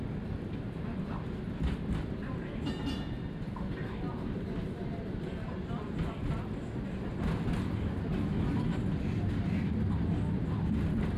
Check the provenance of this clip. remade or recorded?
recorded